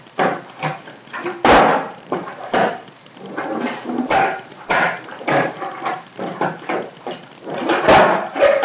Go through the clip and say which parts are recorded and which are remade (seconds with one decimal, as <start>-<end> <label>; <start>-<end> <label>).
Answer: 0.0-1.7 recorded; 1.7-5.5 remade; 5.5-8.6 recorded